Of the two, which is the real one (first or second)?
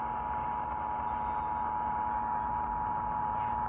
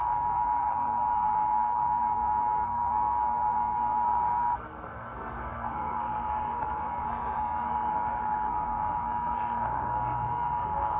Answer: first